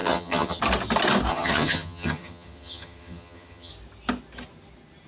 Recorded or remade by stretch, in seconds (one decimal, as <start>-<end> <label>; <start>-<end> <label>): 0.0-0.6 remade; 0.6-1.3 recorded; 1.3-3.7 remade; 3.7-5.1 recorded